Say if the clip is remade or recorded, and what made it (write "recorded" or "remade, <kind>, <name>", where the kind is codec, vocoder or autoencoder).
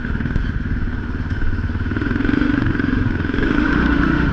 remade, autoencoder, DAC-VAE